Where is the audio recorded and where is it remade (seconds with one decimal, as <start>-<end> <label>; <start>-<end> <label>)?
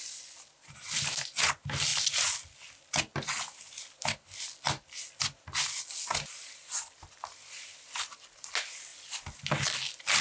0.0-10.2 recorded